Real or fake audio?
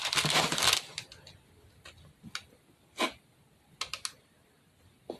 real